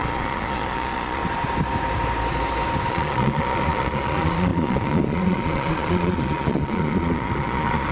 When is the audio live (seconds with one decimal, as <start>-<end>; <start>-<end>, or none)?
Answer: 1.2-2.9